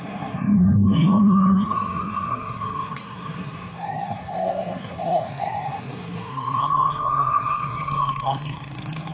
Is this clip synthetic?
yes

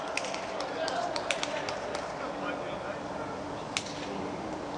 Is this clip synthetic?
no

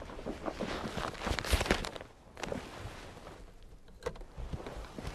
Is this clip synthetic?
no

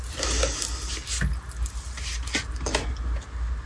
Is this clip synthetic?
no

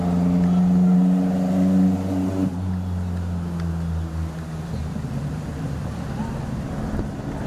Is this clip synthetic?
no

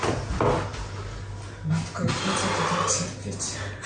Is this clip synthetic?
no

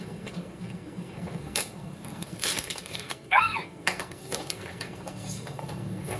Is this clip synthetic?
yes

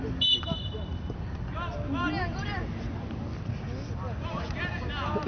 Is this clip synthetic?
no